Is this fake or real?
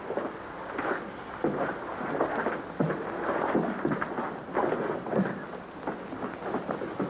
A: real